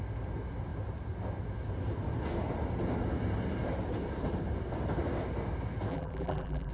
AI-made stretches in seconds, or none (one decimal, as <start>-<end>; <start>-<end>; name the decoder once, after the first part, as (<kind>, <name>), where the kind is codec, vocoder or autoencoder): 5.9-6.7 (vocoder, BigVGAN v2)